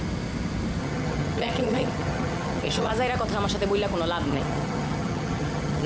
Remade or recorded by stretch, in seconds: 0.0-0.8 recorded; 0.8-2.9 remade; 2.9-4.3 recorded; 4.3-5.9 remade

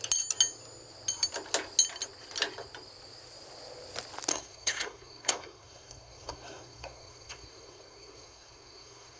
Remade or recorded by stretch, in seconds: 0.0-4.3 recorded; 4.3-9.2 remade

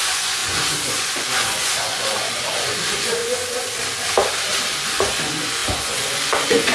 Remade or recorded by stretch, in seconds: 0.0-3.2 remade; 3.2-4.8 recorded; 4.8-6.7 remade

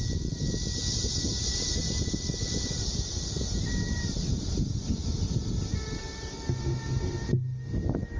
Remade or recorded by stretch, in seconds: 0.0-8.2 recorded